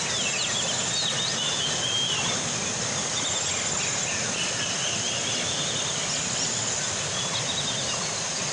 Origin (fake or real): real